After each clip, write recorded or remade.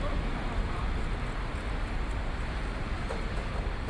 recorded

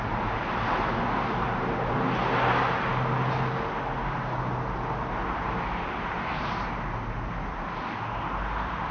recorded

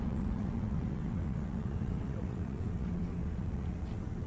remade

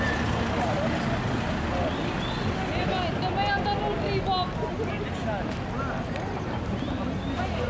recorded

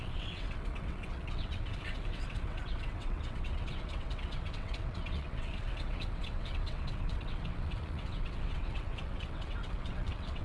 remade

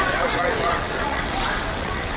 remade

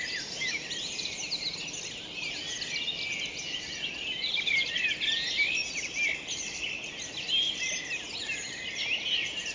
recorded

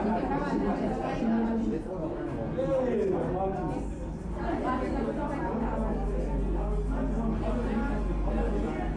recorded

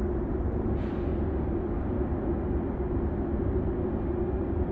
recorded